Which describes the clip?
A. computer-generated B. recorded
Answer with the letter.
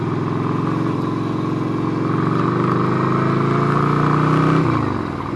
B